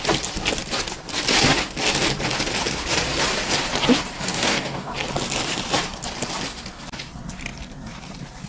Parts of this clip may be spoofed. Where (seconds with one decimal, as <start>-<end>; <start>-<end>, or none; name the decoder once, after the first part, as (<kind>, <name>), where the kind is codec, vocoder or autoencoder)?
4.3-4.9 (codec, DAC)